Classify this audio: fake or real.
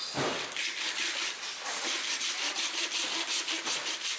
fake